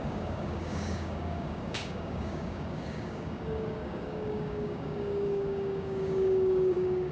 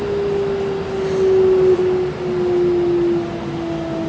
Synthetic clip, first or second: first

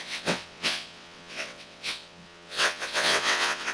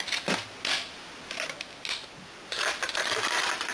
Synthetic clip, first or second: first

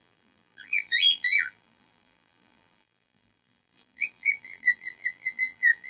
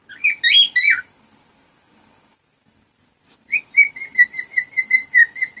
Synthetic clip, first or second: first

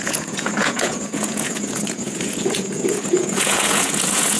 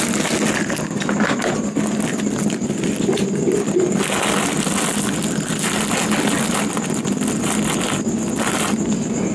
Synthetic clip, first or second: first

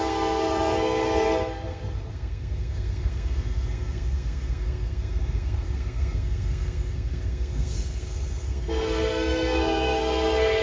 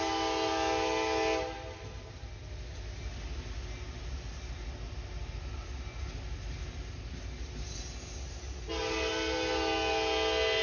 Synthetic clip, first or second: first